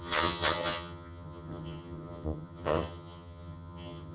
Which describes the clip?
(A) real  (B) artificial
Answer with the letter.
B